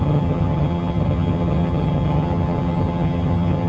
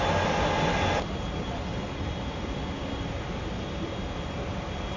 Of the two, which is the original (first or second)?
second